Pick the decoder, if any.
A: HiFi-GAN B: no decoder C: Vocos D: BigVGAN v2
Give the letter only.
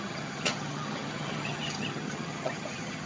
A